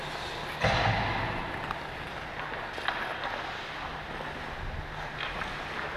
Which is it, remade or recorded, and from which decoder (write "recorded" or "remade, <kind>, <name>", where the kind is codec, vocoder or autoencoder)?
recorded